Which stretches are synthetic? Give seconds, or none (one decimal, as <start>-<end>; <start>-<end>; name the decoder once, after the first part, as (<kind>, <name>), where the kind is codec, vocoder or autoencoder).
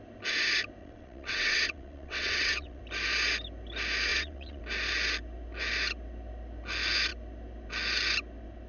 0.8-2.8 (vocoder, WaveNeXt); 4.1-4.6